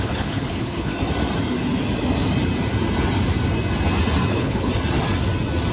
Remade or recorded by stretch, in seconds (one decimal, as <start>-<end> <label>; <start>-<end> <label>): 0.0-0.9 remade; 0.9-4.3 recorded; 4.3-4.7 remade; 4.7-5.7 recorded